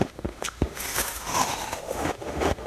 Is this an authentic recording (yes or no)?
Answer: no